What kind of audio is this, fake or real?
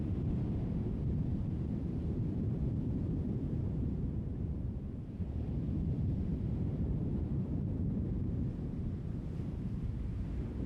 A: fake